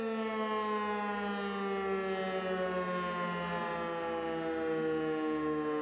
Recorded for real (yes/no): yes